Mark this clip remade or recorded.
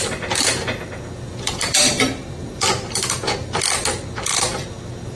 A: remade